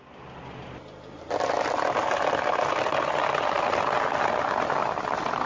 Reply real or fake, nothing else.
real